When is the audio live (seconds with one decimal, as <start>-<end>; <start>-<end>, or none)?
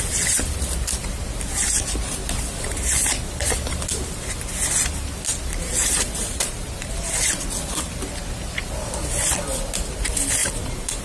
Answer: 0.0-5.8; 6.9-10.4